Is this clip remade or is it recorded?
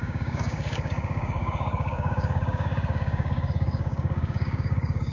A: remade